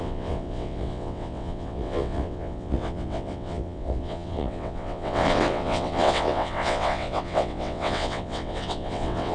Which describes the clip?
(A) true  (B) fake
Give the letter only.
B